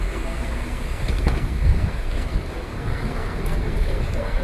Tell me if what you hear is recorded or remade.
remade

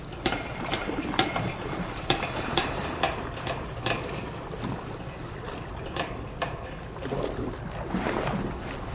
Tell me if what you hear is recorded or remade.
remade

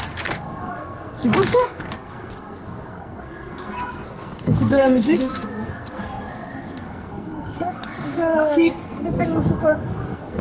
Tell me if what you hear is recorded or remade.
remade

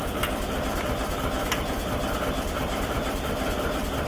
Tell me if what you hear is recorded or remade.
recorded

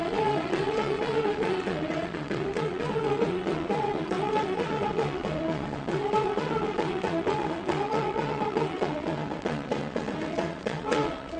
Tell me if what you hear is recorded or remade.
remade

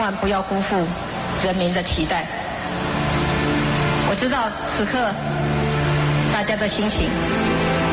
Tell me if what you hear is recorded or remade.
recorded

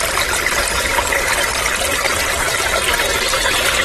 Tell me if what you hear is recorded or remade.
recorded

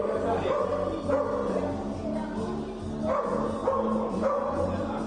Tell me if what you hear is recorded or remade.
recorded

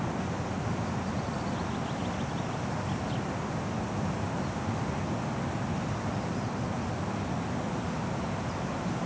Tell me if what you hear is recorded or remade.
recorded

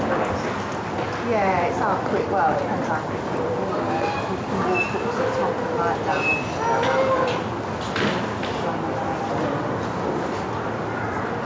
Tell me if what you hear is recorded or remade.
recorded